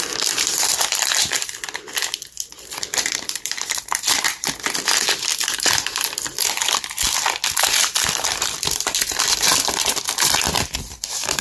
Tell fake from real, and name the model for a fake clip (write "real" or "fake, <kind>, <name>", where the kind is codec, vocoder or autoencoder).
fake, vocoder, BigVGAN v2